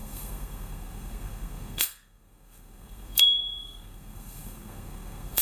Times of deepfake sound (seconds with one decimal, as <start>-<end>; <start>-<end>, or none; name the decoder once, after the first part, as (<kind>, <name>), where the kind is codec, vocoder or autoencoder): 0.0-5.4 (codec, SNAC)